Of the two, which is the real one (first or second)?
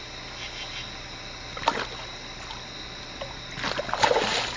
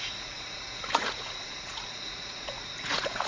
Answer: first